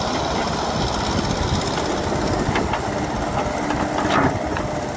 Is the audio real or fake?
real